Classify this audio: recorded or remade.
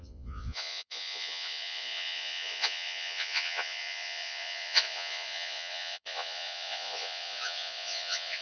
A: remade